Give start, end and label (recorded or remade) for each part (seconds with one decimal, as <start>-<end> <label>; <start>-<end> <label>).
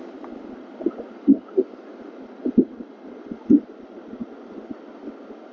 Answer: 0.0-5.5 recorded